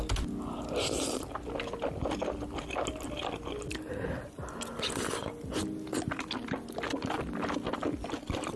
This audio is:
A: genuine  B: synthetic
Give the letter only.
A